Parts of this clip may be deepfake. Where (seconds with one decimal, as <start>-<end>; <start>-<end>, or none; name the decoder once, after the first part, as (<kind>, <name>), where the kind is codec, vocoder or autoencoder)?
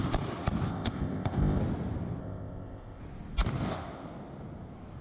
0.7-1.6 (codec, ZipCodec); 2.2-3.0